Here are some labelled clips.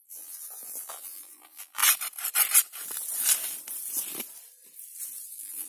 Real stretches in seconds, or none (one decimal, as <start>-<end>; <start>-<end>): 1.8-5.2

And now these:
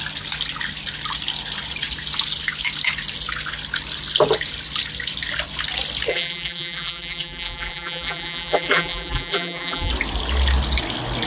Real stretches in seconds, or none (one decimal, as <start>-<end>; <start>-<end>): 0.0-6.1; 9.9-11.3

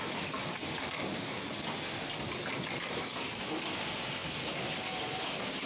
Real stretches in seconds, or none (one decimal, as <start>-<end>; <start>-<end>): 0.4-3.4; 4.2-4.8